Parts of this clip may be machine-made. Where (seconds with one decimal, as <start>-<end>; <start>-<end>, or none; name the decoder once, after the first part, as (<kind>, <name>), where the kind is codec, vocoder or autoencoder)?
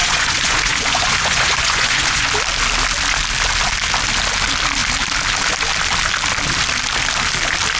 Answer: 0.0-2.3 (vocoder, Vocos)